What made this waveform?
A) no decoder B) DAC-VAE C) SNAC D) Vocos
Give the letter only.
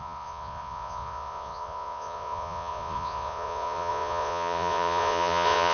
D